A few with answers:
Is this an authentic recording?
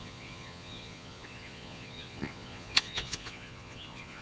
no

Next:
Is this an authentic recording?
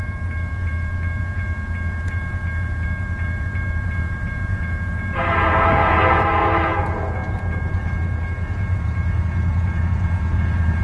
no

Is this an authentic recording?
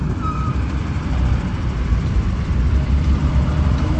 no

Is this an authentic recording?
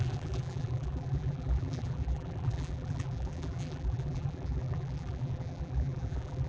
no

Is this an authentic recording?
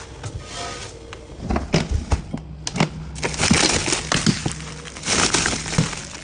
yes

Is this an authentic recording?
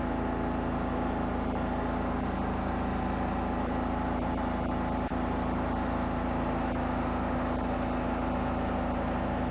yes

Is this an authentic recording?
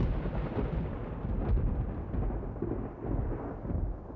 yes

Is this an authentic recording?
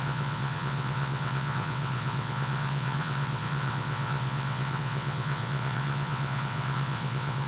no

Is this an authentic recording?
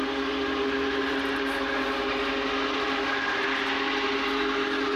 yes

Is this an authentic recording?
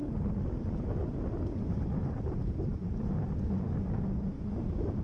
yes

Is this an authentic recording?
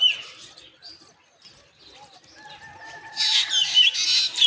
yes